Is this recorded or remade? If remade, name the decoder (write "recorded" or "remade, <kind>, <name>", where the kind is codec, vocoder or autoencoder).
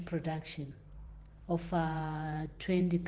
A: remade, vocoder, Vocos